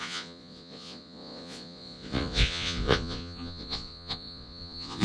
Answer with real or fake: fake